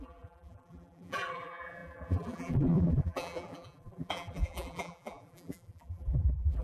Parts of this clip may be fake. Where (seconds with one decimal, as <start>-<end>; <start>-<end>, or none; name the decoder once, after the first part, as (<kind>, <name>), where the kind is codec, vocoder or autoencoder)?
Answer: 0.0-6.6 (vocoder, BigVGAN v2)